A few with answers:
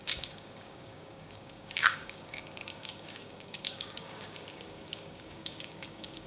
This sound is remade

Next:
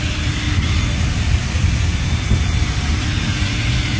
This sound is recorded